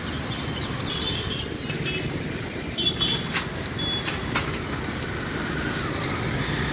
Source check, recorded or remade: recorded